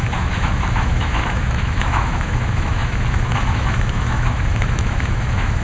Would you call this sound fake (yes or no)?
yes